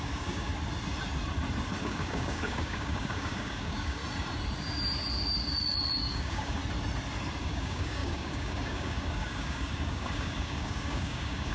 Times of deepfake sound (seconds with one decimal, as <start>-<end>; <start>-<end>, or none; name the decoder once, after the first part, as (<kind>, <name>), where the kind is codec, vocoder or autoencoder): 0.0-0.5 (codec, DAC); 1.8-4.0; 6.1-6.6; 7.4-11.5